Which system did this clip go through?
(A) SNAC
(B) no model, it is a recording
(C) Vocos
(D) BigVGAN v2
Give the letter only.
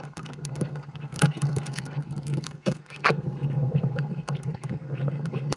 A